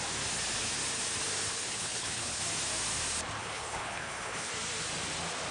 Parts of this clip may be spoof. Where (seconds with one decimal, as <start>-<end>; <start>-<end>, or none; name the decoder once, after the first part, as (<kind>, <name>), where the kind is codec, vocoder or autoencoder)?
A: 1.5-2.4 (codec, HILCodec); 3.4-4.5